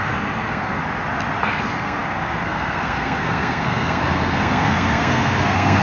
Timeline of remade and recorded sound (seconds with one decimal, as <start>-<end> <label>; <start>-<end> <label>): 0.0-0.8 remade; 0.8-1.4 recorded; 1.4-5.8 remade